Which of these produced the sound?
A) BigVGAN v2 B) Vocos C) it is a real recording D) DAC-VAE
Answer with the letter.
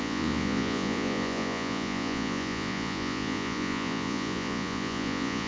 B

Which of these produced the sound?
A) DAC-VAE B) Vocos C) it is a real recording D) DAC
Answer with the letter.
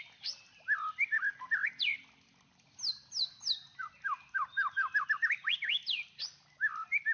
C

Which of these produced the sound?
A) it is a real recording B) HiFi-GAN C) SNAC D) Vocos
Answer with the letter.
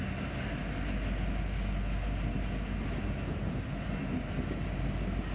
A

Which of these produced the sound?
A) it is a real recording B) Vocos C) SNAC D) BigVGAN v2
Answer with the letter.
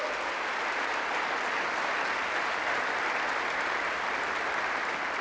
A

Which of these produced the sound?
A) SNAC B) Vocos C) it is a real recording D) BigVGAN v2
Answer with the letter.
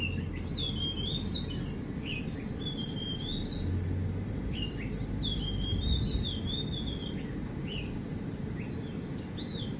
C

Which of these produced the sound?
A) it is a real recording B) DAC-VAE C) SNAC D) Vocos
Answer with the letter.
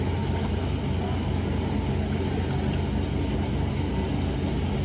A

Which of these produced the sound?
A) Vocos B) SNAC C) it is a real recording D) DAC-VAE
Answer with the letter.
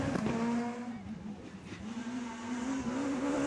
C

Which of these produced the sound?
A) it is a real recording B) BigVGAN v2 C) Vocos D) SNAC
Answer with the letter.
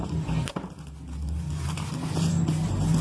A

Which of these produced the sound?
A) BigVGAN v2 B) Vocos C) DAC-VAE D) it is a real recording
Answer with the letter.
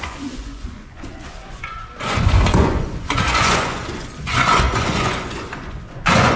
B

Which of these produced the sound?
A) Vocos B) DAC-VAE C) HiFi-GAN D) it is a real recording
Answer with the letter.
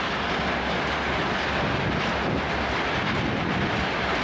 D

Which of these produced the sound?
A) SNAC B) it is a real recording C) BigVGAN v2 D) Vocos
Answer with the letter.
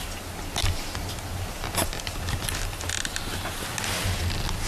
B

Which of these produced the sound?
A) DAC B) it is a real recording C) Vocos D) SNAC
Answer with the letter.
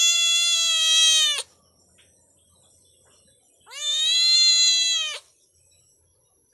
B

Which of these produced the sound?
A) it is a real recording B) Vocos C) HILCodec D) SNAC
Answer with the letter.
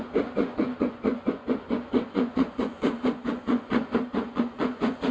B